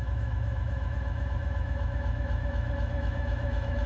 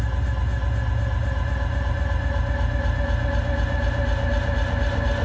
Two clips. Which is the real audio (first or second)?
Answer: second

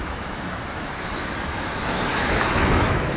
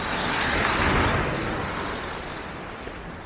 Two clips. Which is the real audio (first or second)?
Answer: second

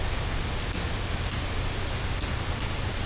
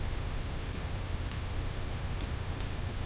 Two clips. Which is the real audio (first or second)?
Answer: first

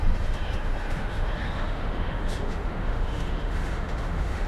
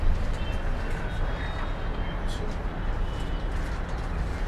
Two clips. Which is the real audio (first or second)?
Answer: second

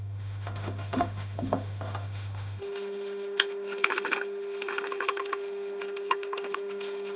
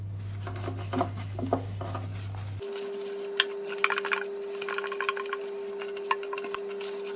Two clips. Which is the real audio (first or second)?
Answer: second